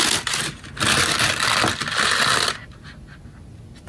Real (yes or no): yes